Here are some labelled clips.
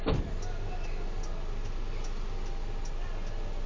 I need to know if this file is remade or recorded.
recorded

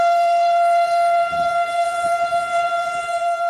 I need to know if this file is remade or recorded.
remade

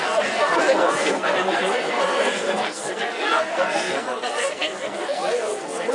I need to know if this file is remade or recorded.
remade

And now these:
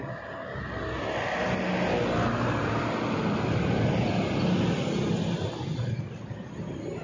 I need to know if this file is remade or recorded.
recorded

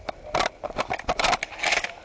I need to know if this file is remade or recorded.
recorded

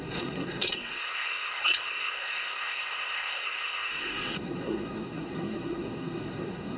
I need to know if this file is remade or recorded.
remade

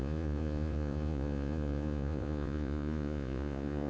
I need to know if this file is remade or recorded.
remade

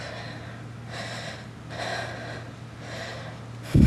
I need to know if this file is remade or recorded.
recorded